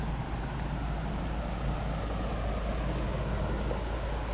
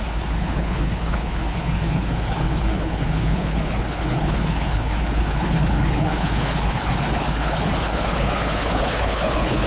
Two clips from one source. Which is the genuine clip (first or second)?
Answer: first